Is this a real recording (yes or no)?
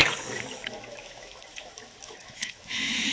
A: no